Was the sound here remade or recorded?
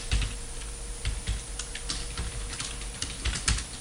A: recorded